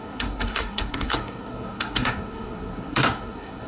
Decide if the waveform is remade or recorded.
remade